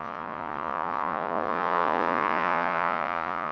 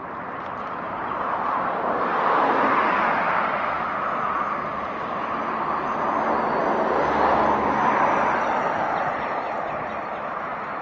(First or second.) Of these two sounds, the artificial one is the first